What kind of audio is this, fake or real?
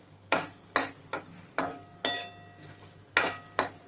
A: real